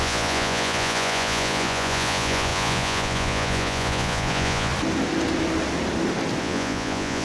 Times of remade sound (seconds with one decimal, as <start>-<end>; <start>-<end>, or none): 0.0-4.7; 6.4-7.2